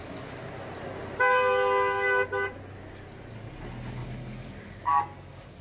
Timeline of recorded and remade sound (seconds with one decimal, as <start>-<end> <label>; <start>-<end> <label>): 0.0-4.0 recorded; 4.0-5.6 remade